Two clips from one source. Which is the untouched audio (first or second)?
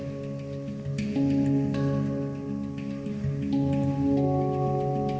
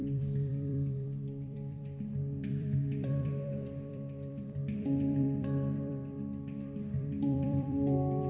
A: first